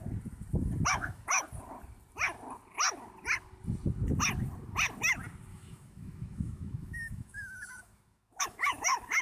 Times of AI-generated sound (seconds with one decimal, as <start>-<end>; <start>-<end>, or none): 0.9-1.4; 5.5-9.2